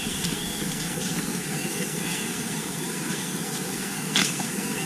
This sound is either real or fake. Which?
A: fake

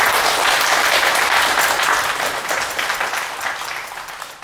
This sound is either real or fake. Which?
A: real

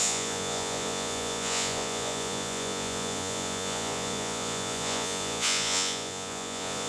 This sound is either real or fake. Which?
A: fake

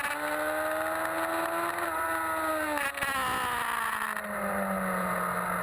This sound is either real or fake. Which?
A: real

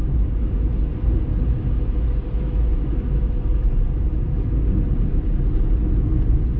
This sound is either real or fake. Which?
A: real